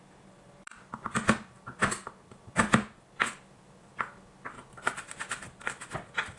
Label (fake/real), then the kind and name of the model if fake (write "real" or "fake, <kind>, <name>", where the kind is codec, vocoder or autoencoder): real